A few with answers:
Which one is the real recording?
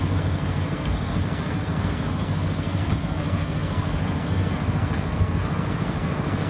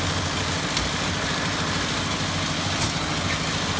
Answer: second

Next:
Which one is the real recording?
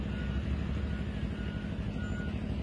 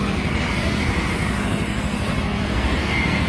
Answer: first